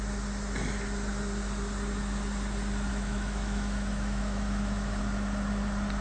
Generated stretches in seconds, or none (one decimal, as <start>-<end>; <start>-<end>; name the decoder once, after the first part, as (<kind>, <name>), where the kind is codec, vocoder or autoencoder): 2.9-5.0 (autoencoder, DAC-VAE)